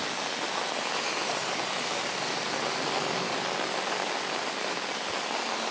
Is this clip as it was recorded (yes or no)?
yes